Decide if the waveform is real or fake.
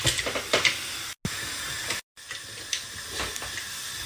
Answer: real